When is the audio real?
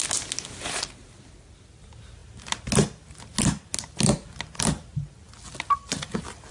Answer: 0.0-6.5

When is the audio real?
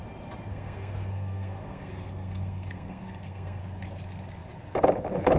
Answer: 0.0-0.5; 3.6-5.4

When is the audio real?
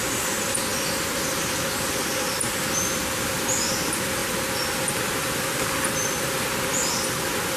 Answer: 0.0-7.6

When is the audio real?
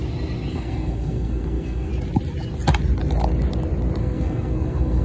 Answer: 0.0-0.5; 1.9-4.0